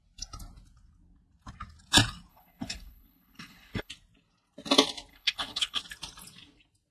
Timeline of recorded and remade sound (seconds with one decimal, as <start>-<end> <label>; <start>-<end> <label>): 0.0-2.3 recorded; 2.3-3.9 remade; 3.9-5.1 recorded; 5.1-5.8 remade; 5.8-6.9 recorded